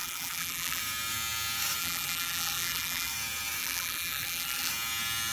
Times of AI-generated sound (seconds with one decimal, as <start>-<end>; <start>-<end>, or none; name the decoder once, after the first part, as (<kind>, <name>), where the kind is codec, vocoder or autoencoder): 0.0-0.8 (vocoder, BigVGAN v2); 1.8-3.1; 3.6-4.7